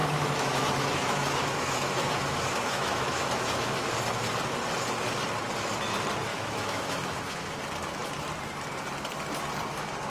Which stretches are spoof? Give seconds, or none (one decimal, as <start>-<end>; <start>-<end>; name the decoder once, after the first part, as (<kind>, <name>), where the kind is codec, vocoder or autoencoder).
0.0-3.9 (autoencoder, DAC-VAE); 6.3-7.6